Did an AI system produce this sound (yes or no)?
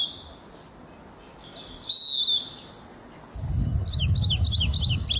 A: no